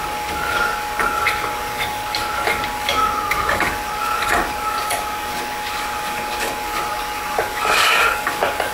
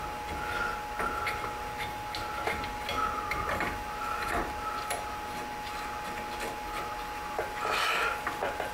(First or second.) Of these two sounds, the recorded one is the second